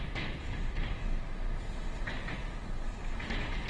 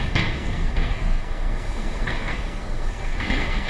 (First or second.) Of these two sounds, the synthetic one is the second